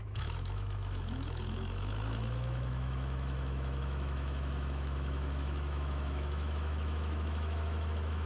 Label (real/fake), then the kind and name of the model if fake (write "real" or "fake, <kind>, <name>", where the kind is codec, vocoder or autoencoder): fake, autoencoder, DAC-VAE